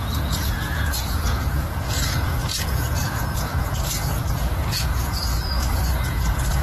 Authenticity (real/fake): fake